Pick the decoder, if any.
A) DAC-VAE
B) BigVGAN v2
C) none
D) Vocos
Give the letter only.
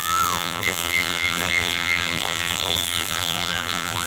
B